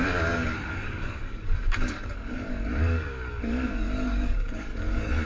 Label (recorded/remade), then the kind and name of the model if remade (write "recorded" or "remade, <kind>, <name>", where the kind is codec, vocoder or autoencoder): remade, codec, DAC